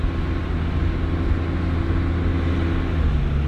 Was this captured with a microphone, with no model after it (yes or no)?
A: yes